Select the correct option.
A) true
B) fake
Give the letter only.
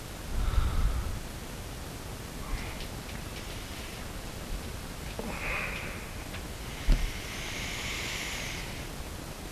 A